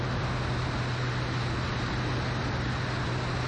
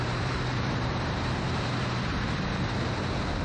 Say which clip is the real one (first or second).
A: first